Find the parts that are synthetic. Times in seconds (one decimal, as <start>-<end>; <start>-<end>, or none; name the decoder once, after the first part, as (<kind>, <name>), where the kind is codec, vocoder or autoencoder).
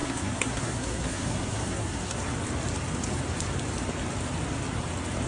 0.0-2.2 (codec, SNAC)